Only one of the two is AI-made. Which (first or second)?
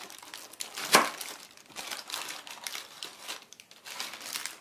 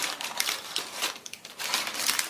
second